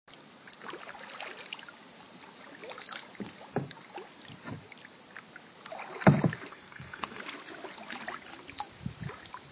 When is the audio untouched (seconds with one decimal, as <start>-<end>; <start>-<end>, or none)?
0.0-6.5; 7.2-9.5